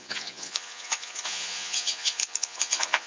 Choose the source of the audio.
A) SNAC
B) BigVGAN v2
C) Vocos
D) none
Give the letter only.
C